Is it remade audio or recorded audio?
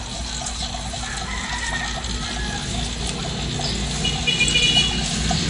recorded